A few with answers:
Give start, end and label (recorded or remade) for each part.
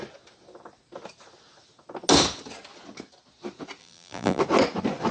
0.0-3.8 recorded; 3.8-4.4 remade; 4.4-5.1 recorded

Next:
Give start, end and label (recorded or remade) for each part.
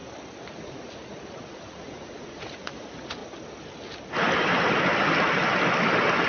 0.0-0.5 recorded; 0.5-3.2 remade; 3.2-6.3 recorded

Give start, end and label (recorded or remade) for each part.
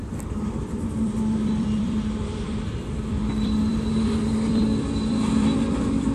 0.0-6.1 remade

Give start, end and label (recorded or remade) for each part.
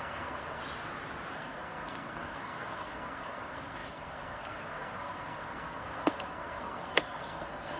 0.0-0.6 remade; 0.6-1.3 recorded; 1.3-7.8 remade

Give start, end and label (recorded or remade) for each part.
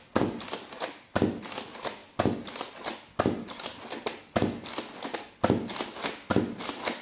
0.0-7.0 recorded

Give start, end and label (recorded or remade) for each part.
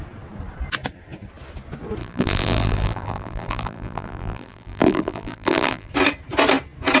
0.0-2.0 recorded; 2.0-5.9 remade; 5.9-7.0 recorded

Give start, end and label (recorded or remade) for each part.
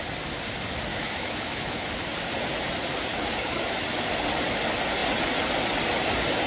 0.0-0.9 recorded; 0.9-1.9 remade; 1.9-3.1 recorded; 3.1-3.6 remade; 3.6-6.5 recorded